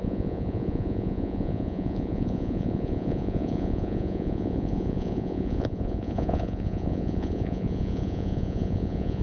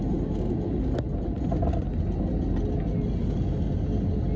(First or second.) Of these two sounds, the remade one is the first